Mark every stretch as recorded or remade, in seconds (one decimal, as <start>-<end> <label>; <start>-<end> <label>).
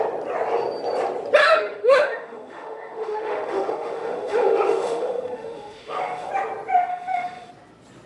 0.0-1.4 recorded; 1.4-6.3 remade; 6.3-6.9 recorded; 6.9-7.5 remade; 7.5-8.1 recorded